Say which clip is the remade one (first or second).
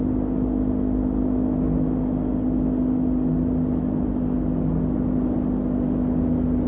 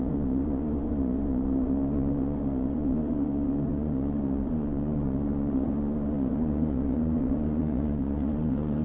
second